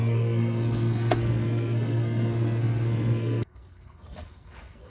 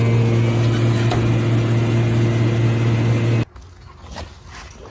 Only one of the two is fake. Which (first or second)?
first